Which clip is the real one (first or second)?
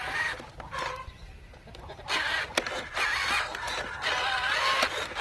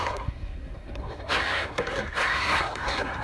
first